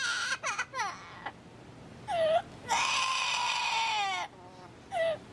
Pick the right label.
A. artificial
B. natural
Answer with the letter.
B